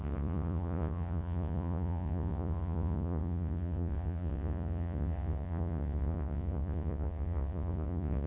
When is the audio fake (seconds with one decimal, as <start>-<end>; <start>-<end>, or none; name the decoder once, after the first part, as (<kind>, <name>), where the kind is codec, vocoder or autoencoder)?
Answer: 0.0-8.3 (vocoder, Vocos)